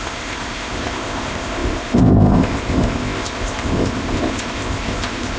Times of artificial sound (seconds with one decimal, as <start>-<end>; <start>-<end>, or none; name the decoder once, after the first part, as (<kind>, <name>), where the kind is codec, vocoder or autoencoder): 0.0-5.4 (codec, ZipCodec)